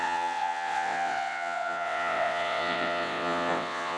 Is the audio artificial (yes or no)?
yes